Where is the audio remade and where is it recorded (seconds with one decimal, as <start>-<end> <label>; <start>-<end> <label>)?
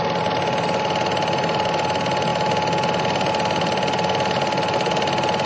0.0-5.5 recorded